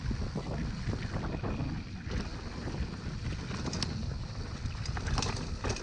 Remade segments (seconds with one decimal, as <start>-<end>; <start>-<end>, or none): none